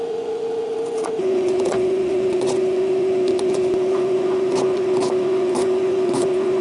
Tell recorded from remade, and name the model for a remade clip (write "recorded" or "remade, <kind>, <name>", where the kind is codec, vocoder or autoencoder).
remade, vocoder, Vocos